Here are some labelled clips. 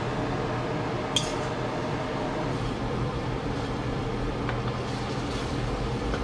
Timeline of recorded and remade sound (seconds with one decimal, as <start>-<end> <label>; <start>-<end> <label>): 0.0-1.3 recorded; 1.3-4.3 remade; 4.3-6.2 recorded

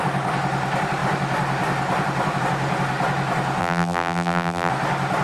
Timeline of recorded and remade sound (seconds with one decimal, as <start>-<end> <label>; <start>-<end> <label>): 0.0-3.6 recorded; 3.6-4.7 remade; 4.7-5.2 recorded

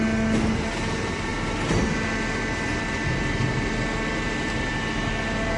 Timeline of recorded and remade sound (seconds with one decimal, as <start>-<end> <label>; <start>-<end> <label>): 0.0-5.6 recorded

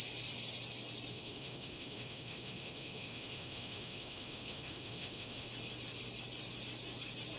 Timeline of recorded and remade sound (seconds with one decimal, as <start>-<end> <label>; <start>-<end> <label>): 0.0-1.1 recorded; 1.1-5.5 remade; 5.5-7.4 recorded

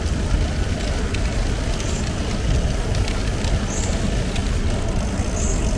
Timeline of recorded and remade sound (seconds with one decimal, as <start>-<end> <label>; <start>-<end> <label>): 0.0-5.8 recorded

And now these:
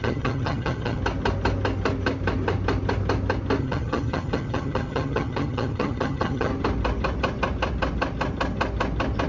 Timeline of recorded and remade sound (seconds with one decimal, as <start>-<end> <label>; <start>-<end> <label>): 0.0-1.0 remade; 1.0-3.6 recorded; 3.6-6.5 remade; 6.5-9.3 recorded

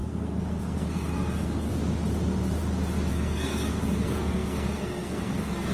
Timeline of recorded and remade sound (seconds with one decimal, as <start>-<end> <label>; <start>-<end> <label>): 0.0-1.7 remade; 1.7-3.1 recorded; 3.1-5.7 remade